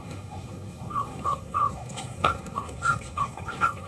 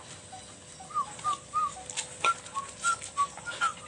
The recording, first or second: second